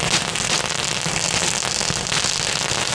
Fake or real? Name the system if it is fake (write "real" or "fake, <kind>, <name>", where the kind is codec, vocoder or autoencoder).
real